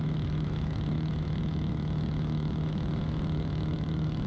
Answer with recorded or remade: remade